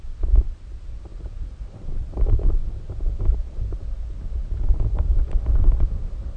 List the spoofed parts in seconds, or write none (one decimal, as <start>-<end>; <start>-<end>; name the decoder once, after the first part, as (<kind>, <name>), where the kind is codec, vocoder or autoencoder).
none